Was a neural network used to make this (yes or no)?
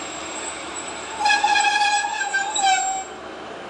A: no